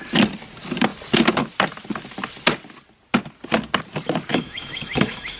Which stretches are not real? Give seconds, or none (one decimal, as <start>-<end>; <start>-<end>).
4.3-5.4